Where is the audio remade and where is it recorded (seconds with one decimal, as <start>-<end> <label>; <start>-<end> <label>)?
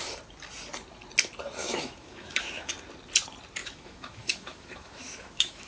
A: 0.0-1.6 recorded; 1.6-2.7 remade; 2.7-3.6 recorded; 3.6-5.7 remade